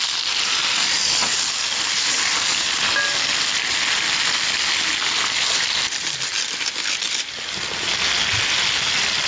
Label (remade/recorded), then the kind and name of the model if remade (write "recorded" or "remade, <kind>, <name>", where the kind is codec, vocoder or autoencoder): recorded